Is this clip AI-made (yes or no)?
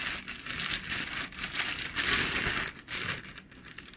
no